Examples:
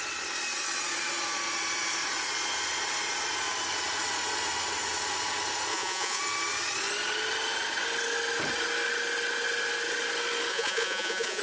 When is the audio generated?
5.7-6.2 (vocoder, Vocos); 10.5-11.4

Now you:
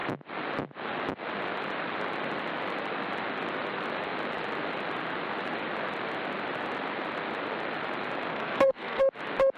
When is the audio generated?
8.3-9.0 (codec, SNAC)

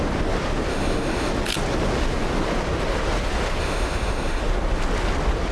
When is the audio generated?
0.7-1.3 (autoencoder, DAC-VAE); 3.6-4.4

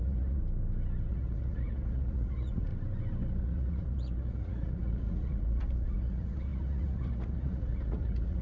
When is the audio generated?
0.0-0.4 (vocoder, Vocos); 1.1-2.7; 3.4-8.4